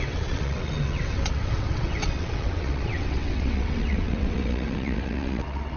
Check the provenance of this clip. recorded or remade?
remade